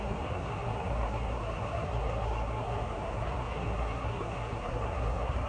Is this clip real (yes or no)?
no